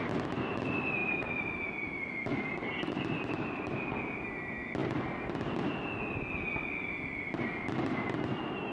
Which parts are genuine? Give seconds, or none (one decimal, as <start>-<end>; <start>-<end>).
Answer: 0.0-1.0; 3.9-8.7

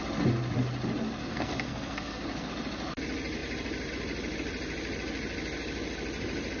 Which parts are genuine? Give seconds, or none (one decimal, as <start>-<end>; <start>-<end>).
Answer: 0.0-1.2; 2.5-6.6